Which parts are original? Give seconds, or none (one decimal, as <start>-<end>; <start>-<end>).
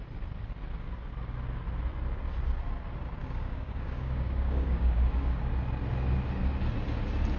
0.0-3.2; 5.5-7.4